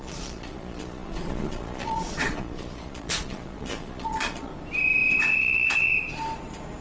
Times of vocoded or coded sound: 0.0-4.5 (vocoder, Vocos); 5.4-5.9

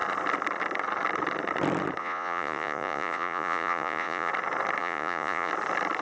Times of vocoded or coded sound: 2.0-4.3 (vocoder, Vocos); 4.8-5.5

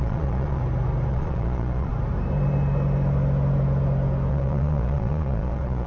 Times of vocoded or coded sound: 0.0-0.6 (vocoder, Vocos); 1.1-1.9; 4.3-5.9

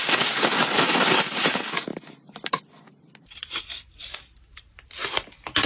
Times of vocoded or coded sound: none

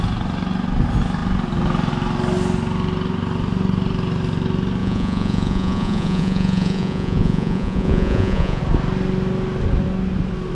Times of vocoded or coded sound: 4.8-8.6 (vocoder, Vocos)